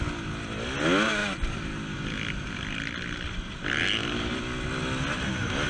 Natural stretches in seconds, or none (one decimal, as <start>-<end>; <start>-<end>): 0.0-5.7